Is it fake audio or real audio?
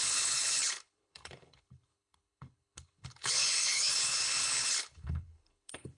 fake